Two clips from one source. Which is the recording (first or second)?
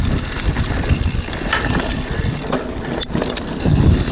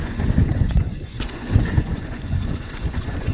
first